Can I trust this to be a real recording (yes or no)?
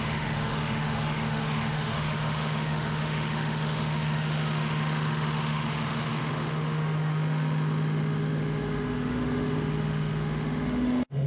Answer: no